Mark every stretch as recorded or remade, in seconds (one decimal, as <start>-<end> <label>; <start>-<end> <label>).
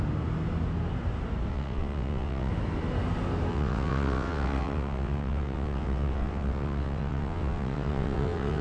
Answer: 0.0-1.5 recorded; 1.5-2.5 remade; 2.5-3.5 recorded; 3.5-8.6 remade